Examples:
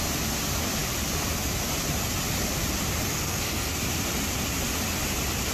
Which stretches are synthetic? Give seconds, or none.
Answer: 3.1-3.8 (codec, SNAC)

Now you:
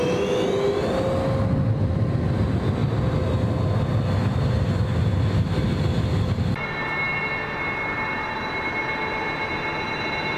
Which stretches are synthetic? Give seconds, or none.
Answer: none

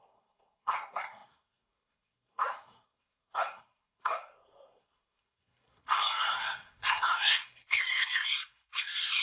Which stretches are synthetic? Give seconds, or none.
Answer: 0.0-9.2 (codec, SNAC)

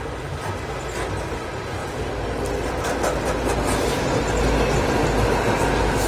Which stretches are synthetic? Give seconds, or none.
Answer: none

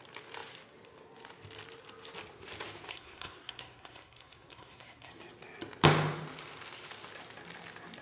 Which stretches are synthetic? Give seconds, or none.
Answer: 2.9-5.1 (codec, SNAC)

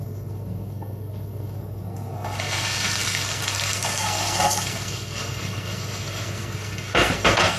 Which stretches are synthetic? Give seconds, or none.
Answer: 0.0-7.6 (codec, SNAC)

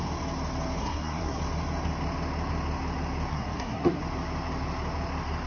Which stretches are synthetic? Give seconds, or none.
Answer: 0.8-1.4 (codec, SNAC); 3.3-4.0

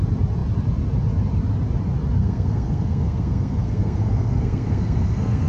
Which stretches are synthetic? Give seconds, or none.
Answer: 2.2-5.5 (codec, SNAC)